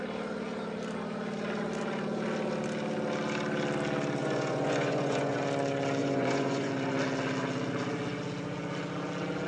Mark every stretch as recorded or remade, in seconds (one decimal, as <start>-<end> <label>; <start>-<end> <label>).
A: 0.0-4.2 recorded; 4.2-5.4 remade; 5.4-6.0 recorded; 6.0-6.7 remade; 6.7-9.5 recorded